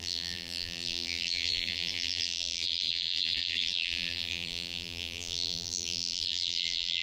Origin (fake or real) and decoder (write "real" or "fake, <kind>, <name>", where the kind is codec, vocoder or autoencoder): fake, vocoder, BigVGAN v2